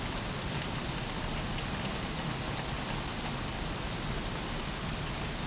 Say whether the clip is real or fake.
real